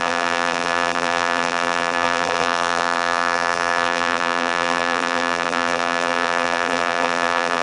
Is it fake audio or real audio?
fake